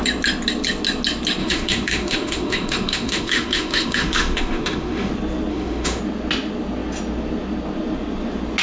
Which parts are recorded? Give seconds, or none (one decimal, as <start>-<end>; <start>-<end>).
0.0-1.4; 5.1-5.5; 6.0-8.6